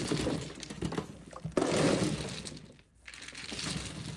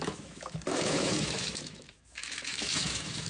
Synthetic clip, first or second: second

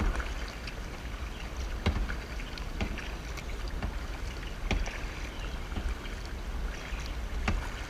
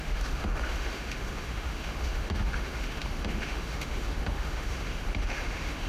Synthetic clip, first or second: second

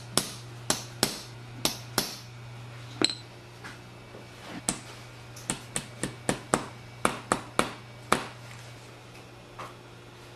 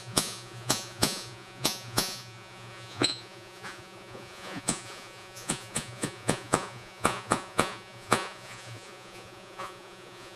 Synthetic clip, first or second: second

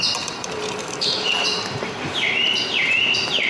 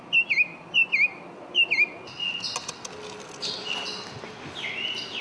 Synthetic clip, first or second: first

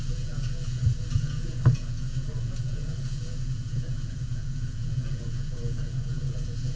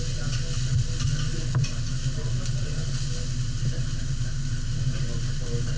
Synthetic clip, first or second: first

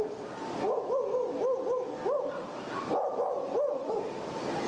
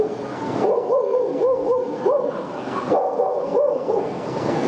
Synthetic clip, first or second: second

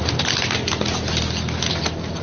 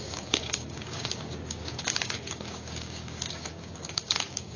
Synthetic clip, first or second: second